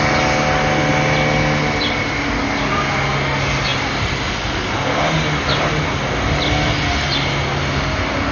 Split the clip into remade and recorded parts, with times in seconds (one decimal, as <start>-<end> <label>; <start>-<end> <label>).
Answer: 0.0-8.3 recorded